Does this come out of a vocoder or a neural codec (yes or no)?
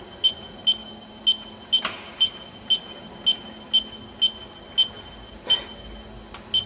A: no